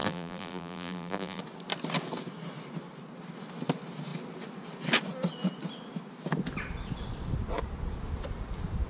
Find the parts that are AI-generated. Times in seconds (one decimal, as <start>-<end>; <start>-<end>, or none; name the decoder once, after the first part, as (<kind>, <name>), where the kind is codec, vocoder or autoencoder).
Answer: 0.0-1.4 (vocoder, BigVGAN v2)